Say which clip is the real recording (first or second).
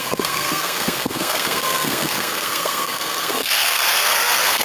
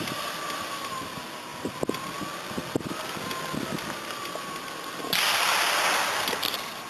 second